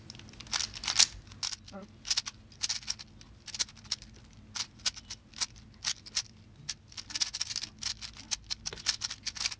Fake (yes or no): no